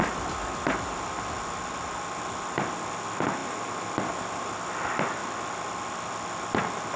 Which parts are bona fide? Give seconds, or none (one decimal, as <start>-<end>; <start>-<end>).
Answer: 0.0-7.0

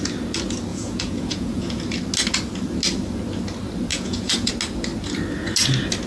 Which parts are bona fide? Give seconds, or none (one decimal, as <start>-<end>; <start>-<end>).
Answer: 0.0-0.7; 1.8-3.9; 4.5-6.1

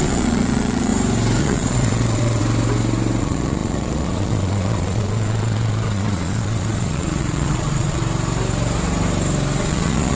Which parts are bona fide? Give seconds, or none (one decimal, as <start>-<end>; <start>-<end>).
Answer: 0.9-1.4; 2.4-3.2; 8.0-9.6

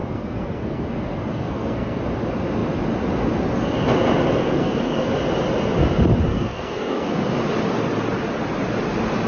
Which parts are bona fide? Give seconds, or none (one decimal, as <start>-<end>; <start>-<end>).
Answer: 2.0-4.4; 5.1-6.3; 7.2-9.3

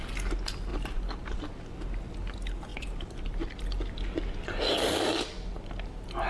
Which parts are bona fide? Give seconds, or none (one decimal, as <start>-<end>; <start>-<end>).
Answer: 0.0-0.7; 1.4-2.7; 3.6-6.3

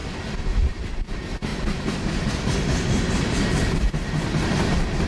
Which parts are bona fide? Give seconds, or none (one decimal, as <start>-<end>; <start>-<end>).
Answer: 0.0-0.7; 1.5-4.5